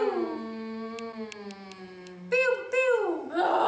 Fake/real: real